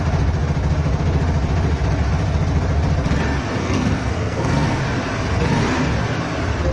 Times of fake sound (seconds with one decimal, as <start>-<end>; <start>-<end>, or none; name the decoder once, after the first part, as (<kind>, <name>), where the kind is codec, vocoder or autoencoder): 3.6-4.8 (codec, SNAC)